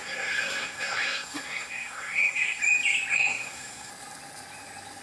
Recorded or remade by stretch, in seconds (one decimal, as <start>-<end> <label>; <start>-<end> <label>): 0.0-2.6 remade; 2.6-3.1 recorded; 3.1-3.9 remade; 3.9-5.0 recorded